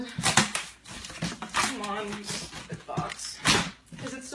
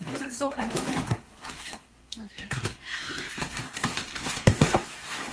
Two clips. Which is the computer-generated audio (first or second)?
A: second